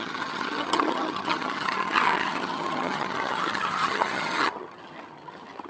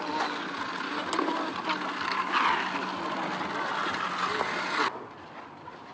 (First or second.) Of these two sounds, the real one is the second